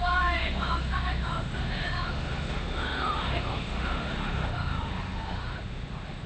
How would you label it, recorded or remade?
remade